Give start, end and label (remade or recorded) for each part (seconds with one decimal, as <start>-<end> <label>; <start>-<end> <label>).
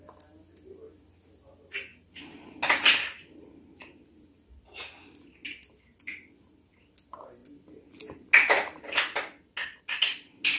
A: 0.0-10.6 recorded